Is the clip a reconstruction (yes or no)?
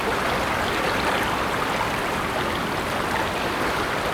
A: no